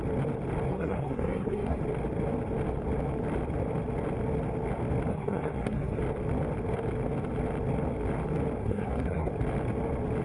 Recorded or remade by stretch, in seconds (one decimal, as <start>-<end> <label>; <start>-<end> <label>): 0.0-0.7 recorded; 0.7-1.8 remade; 1.8-5.1 recorded; 5.1-6.0 remade; 6.0-8.6 recorded; 8.6-9.3 remade; 9.3-10.2 recorded